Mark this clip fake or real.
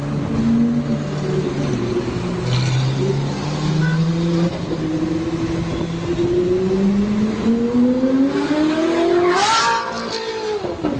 real